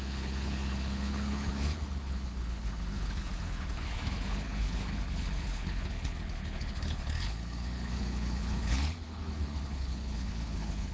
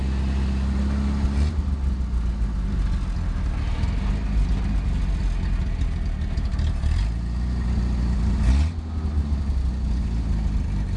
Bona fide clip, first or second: second